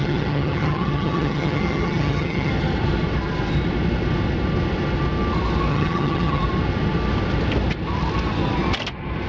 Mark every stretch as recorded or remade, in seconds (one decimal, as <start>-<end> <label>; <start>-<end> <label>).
0.0-2.5 remade; 2.5-5.7 recorded; 5.7-6.4 remade; 6.4-9.3 recorded